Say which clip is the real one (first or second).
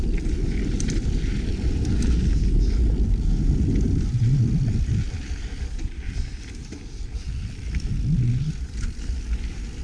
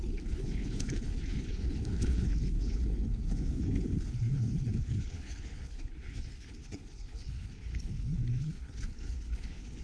first